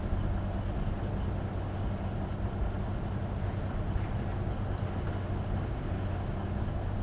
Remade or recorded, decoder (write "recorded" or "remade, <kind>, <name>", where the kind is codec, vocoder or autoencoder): recorded